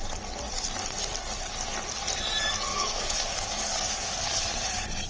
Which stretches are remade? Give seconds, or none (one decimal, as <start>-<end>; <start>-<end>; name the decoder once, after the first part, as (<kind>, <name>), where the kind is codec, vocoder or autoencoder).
2.7-4.4 (codec, DAC)